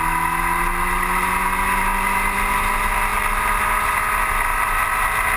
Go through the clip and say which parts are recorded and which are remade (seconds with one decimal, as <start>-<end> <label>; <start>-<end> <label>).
0.0-3.1 recorded; 3.1-5.0 remade; 5.0-5.4 recorded